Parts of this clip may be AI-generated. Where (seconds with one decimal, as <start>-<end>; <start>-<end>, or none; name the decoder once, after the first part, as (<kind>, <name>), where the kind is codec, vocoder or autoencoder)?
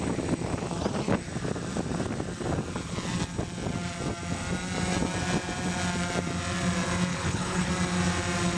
7.1-7.7 (codec, HILCodec)